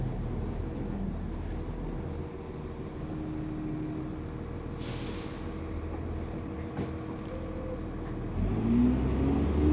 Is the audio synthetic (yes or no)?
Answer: no